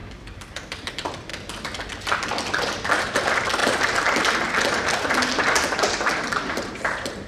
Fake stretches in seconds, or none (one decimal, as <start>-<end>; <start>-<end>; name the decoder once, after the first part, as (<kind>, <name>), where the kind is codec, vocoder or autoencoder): 0.0-1.3 (vocoder, BigVGAN v2); 1.9-3.6; 5.8-7.3